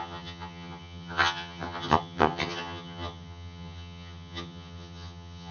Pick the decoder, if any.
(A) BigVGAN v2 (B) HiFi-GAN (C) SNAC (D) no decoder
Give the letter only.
B